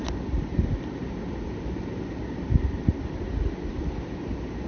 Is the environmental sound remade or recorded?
recorded